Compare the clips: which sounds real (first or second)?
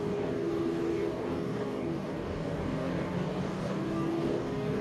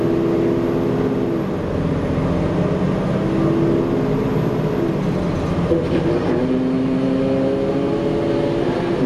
second